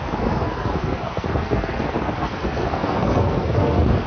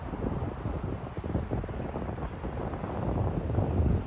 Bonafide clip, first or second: second